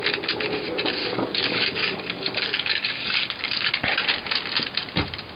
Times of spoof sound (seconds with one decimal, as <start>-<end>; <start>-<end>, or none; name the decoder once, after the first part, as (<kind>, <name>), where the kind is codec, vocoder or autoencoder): 1.0-3.7 (codec, DAC)